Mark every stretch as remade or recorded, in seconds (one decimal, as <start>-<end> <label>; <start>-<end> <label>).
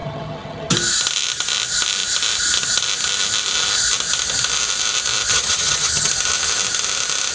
0.0-0.7 remade; 0.7-5.3 recorded; 5.3-6.1 remade; 6.1-7.3 recorded